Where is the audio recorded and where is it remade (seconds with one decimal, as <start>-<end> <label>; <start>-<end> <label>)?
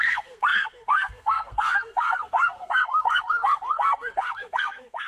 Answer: 0.0-5.1 remade